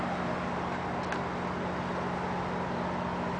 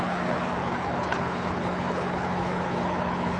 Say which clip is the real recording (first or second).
first